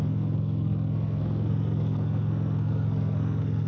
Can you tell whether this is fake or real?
fake